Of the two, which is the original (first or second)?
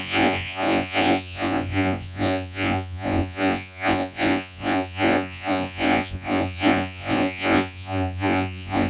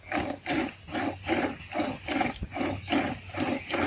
second